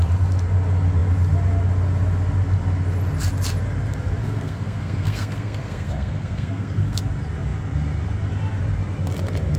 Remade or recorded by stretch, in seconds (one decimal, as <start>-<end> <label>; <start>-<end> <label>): 0.0-4.2 recorded; 4.2-7.0 remade; 7.0-9.6 recorded